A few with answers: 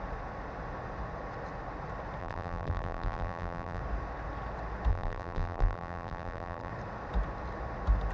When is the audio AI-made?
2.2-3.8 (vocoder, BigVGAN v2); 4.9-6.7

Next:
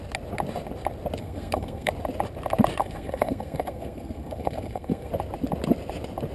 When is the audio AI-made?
1.2-1.9 (codec, SNAC); 2.8-5.1